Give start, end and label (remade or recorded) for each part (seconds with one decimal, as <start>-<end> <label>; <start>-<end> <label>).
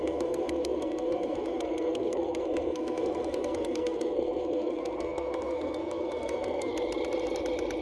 0.0-6.7 remade; 6.7-7.8 recorded